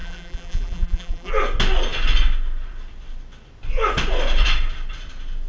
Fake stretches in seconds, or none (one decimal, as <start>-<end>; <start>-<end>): 0.0-1.3